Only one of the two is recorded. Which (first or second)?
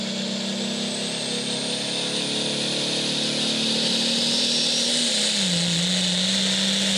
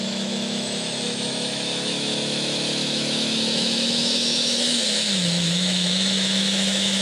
first